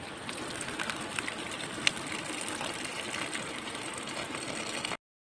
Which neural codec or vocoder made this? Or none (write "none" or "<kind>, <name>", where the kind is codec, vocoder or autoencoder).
none